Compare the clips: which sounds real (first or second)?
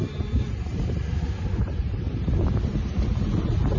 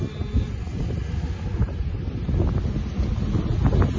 second